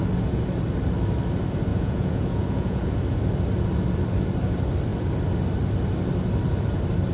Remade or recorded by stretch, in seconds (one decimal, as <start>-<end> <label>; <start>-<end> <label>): 0.0-1.7 recorded; 1.7-2.9 remade; 2.9-7.1 recorded

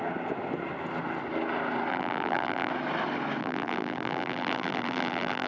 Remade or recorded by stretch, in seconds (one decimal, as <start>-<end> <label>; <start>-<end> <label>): 0.0-1.9 recorded; 1.9-2.7 remade; 2.7-3.4 recorded; 3.4-5.5 remade

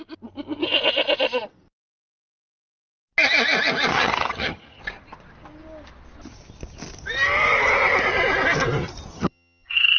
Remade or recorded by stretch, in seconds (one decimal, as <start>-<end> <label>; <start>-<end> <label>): 0.0-3.9 recorded; 3.9-4.8 remade; 4.8-9.1 recorded; 9.1-10.0 remade

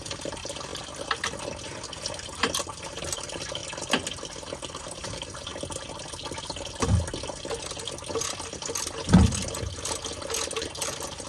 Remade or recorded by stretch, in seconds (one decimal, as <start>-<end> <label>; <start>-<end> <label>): 0.0-0.7 remade; 0.7-2.1 recorded; 2.1-3.6 remade; 3.6-4.7 recorded; 4.7-5.5 remade; 5.5-10.5 recorded; 10.5-11.3 remade